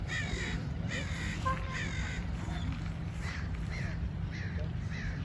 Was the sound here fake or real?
fake